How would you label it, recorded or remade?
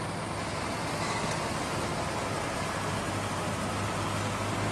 recorded